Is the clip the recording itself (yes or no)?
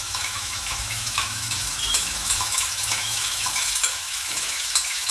no